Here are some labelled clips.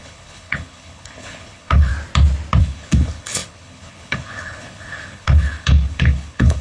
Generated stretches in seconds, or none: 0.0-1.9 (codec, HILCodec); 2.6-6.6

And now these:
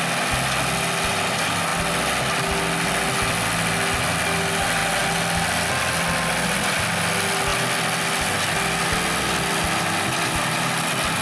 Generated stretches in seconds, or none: none

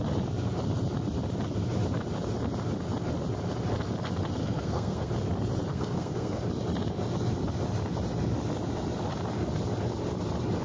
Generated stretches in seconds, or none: 4.4-5.1 (codec, SNAC); 5.7-6.4